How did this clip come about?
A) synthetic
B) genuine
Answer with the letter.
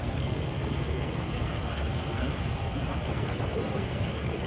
A